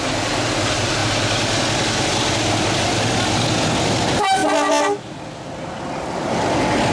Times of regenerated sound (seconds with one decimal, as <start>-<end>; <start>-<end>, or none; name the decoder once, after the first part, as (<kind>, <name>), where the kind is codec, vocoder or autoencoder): none